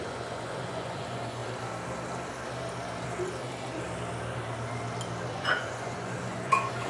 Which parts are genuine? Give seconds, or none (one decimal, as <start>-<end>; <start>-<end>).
1.4-5.3